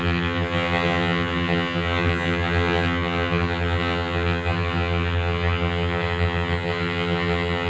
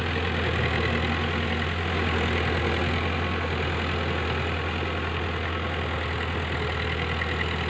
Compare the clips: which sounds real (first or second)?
second